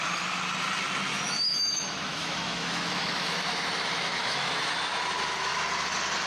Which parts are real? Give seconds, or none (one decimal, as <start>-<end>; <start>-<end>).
0.0-1.1; 4.7-6.3

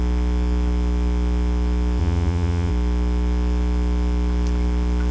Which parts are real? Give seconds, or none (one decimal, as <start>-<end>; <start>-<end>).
0.0-2.0; 2.7-5.1

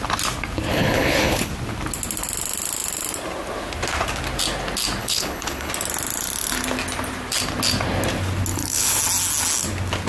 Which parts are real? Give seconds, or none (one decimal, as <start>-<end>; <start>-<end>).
0.0-0.7; 1.5-5.0; 5.7-8.5; 9.0-10.1

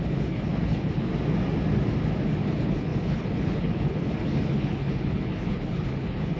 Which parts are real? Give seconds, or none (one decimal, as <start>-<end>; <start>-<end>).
1.1-2.2